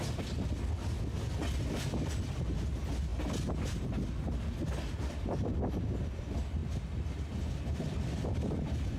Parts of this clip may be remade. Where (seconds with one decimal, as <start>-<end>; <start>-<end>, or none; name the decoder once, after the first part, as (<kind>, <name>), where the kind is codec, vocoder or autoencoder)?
none